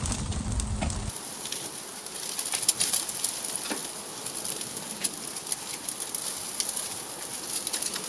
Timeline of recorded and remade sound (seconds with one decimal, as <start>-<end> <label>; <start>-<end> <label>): 0.0-8.1 recorded